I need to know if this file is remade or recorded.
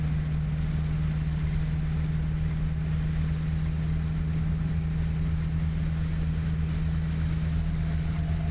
recorded